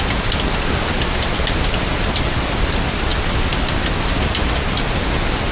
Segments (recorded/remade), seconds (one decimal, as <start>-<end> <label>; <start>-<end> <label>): 0.0-5.5 recorded